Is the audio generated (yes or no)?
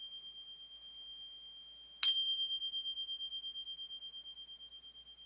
no